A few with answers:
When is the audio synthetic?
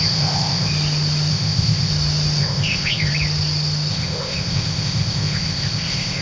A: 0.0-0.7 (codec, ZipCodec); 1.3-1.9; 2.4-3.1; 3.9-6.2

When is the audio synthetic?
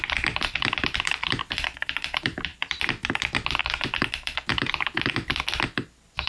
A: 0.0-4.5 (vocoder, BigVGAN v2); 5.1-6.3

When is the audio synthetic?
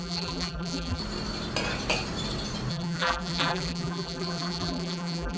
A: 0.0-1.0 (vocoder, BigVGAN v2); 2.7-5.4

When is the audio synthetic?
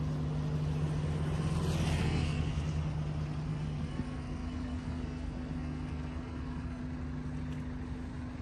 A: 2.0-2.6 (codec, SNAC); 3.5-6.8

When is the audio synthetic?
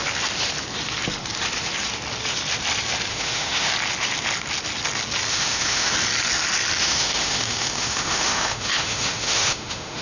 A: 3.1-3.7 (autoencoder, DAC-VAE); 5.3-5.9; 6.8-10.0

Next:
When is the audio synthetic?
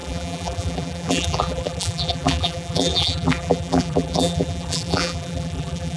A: 0.0-6.0 (vocoder, BigVGAN v2)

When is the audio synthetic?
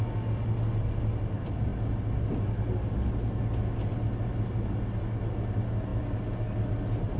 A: none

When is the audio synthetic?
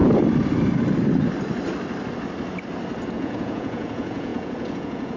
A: 3.1-5.2 (vocoder, Vocos)